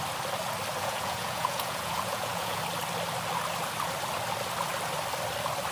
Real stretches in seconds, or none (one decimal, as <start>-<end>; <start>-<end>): 0.0-0.8; 2.6-5.7